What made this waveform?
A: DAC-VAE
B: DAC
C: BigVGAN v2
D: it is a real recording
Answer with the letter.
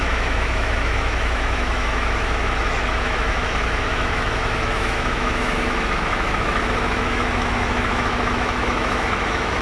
A